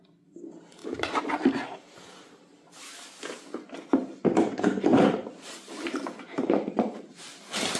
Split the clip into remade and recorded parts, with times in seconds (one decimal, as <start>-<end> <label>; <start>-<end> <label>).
0.0-0.8 recorded; 0.8-1.3 remade; 1.3-4.0 recorded; 4.0-7.8 remade